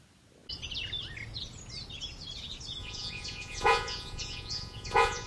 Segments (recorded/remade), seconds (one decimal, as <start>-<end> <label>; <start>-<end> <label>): 0.0-2.8 recorded; 2.8-5.3 remade